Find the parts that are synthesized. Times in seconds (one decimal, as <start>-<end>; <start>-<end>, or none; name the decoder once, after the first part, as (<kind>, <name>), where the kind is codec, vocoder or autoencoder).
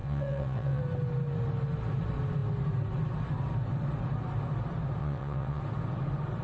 0.0-0.8 (vocoder, WaveNeXt); 5.0-5.6